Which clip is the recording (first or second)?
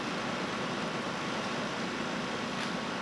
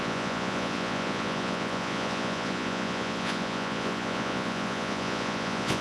first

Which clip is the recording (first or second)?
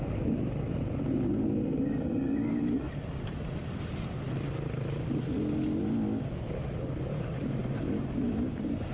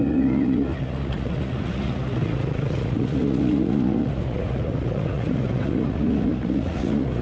first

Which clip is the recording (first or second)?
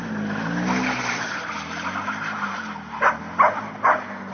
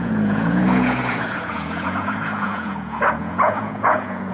first